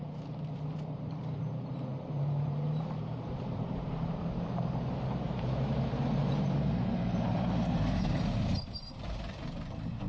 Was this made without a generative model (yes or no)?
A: no